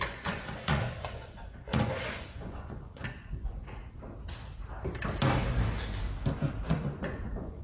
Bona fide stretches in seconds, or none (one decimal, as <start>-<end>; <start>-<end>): 3.6-6.4